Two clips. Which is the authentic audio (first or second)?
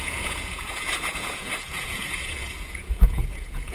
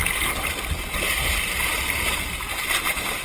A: second